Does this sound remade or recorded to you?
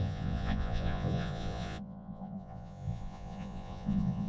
remade